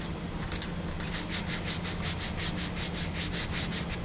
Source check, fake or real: real